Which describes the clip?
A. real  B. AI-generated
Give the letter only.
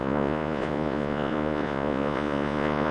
B